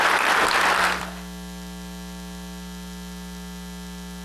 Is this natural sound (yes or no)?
yes